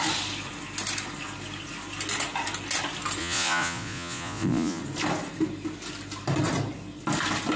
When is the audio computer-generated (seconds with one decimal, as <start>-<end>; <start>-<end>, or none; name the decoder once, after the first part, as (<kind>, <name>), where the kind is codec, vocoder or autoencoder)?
3.2-4.8 (vocoder, Vocos)